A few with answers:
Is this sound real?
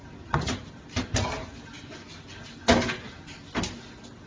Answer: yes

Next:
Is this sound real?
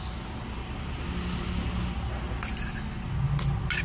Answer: yes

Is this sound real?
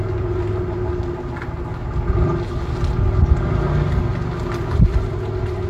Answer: yes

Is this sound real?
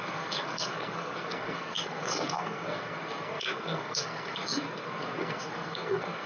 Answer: no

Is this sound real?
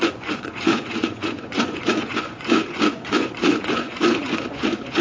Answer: no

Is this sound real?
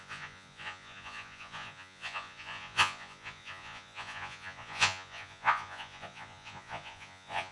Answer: no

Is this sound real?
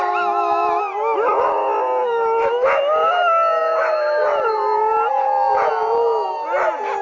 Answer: yes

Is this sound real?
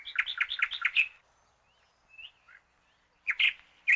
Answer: yes